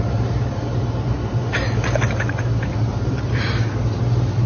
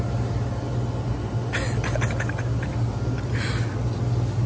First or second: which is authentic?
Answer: second